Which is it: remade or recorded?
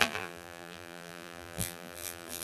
remade